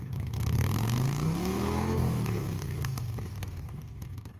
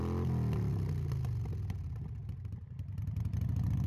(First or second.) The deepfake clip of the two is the first